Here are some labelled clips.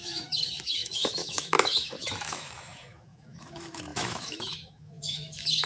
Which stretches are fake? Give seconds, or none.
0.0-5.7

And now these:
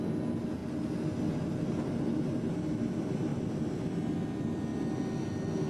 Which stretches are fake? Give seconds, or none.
none

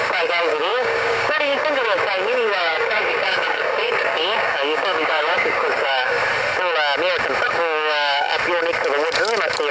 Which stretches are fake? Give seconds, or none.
0.0-6.2; 7.4-8.3